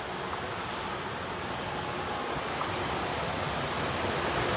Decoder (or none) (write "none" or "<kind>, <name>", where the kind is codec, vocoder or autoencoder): none